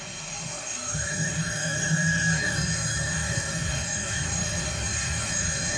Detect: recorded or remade remade